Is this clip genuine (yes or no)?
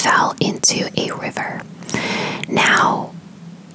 yes